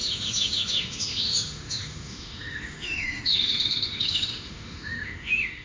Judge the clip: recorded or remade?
remade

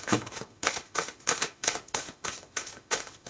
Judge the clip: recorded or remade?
remade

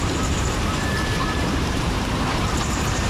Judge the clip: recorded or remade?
remade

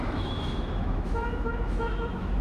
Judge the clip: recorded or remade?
remade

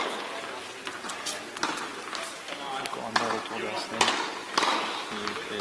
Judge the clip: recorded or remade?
recorded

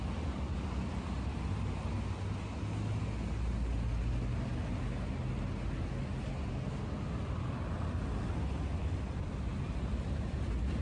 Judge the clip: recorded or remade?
recorded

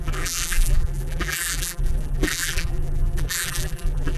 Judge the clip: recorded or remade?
remade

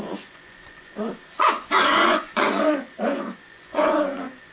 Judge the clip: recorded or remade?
remade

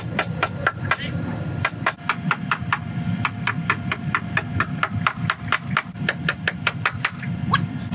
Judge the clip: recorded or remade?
remade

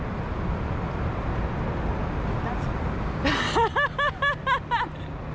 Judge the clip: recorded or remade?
recorded